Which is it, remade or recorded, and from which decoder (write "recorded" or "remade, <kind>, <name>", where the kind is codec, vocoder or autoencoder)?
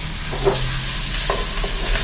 recorded